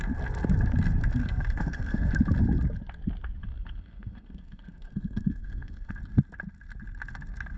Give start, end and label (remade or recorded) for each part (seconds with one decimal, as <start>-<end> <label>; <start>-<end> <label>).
0.0-1.2 recorded; 1.2-2.1 remade; 2.1-3.4 recorded; 3.4-5.9 remade; 5.9-7.6 recorded